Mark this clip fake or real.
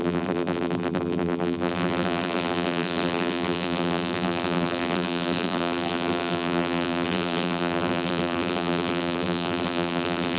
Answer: fake